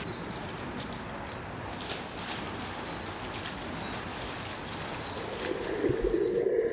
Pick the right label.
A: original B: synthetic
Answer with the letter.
A